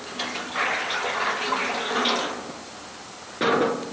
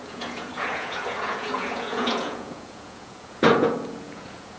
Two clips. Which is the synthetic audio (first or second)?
second